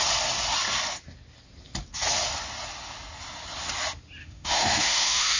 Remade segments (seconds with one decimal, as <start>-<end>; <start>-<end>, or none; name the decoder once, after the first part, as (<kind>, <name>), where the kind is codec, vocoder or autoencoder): 4.2-5.4 (autoencoder, DAC-VAE)